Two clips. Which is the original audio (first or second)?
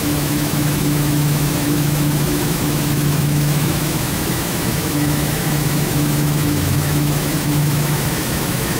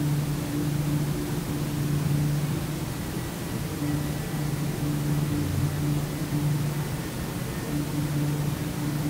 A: second